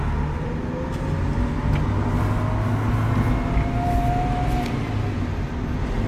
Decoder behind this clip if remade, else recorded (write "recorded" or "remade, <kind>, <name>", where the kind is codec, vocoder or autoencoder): recorded